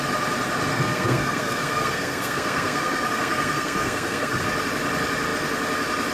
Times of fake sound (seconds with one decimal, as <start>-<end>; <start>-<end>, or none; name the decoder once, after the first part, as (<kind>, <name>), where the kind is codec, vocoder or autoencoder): 0.7-4.4 (codec, SNAC)